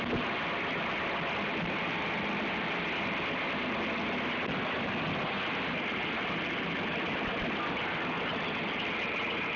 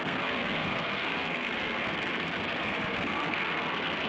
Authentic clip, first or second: first